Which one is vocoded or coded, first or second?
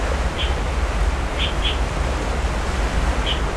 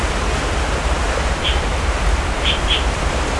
second